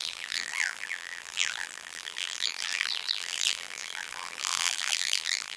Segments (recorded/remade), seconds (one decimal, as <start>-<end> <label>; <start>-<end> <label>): 0.0-5.6 remade